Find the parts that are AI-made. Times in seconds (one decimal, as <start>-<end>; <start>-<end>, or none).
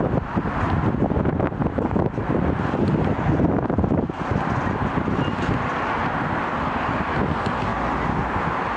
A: 5.7-6.4